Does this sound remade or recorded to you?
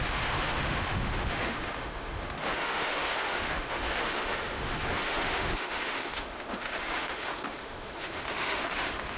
remade